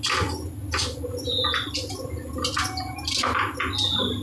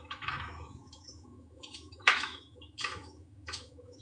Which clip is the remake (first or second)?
second